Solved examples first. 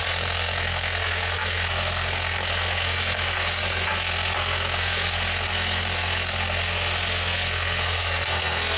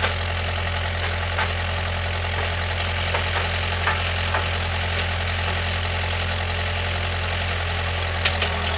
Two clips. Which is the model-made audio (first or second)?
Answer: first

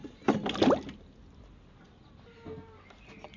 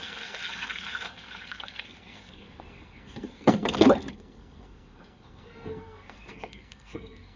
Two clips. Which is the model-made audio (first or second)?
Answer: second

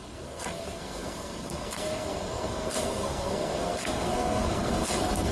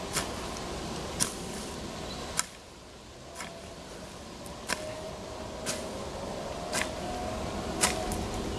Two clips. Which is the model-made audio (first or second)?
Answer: first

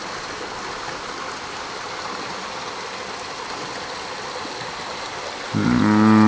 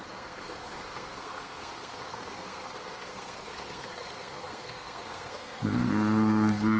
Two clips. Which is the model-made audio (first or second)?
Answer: second